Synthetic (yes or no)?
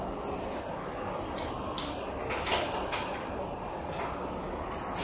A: no